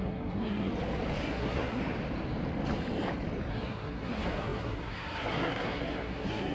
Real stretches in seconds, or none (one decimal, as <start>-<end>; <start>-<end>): 0.7-1.2; 1.8-3.5